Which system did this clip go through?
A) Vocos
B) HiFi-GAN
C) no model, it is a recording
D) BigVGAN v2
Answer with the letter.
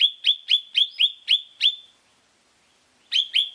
C